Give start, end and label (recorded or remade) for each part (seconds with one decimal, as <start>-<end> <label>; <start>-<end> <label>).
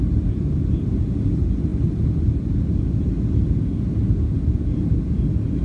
0.0-5.6 recorded